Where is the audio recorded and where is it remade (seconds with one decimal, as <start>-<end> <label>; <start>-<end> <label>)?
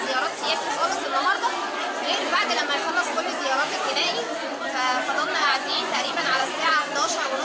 0.0-5.4 recorded; 5.4-6.7 remade; 6.7-7.4 recorded